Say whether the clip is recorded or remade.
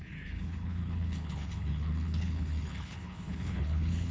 remade